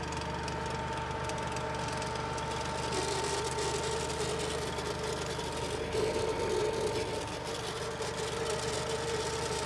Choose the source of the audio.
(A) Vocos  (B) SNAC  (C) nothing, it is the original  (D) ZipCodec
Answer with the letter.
C